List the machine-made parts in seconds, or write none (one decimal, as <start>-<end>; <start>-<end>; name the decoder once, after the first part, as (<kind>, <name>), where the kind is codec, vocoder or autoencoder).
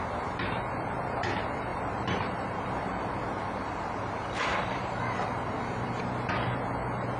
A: 1.7-6.0 (vocoder, BigVGAN v2)